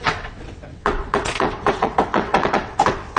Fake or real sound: fake